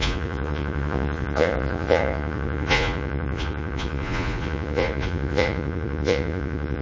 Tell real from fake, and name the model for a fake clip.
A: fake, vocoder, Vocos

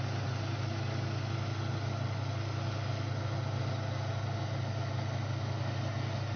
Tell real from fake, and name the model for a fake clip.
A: real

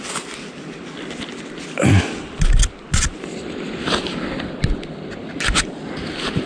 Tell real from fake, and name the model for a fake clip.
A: real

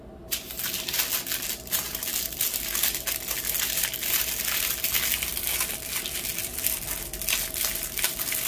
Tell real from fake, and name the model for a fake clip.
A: real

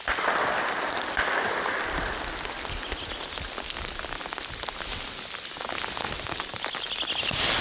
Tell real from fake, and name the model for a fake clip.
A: real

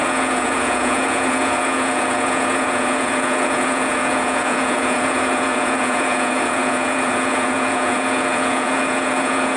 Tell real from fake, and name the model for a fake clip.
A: fake, vocoder, Vocos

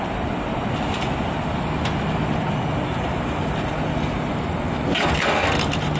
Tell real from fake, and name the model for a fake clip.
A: real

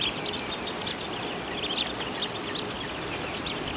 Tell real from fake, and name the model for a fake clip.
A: real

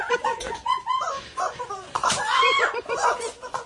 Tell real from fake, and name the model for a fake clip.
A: fake, vocoder, Vocos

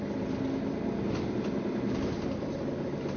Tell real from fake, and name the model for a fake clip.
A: real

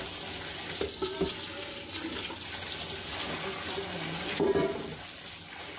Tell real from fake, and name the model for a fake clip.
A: real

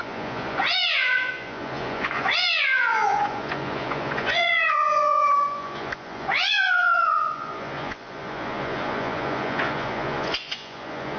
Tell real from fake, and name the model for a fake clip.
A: fake, vocoder, Vocos